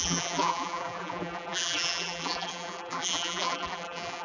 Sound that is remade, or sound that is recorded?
remade